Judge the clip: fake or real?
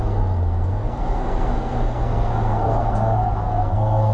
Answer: fake